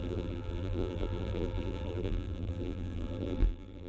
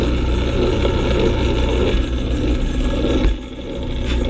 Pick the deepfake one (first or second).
first